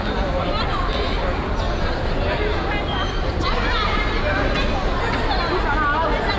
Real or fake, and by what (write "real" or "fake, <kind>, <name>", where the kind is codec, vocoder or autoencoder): real